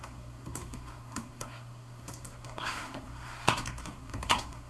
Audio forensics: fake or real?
fake